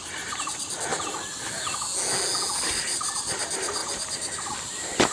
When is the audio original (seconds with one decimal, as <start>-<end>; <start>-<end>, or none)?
0.9-2.6